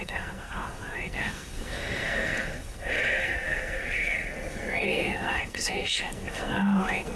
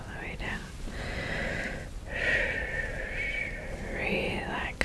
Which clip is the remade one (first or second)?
first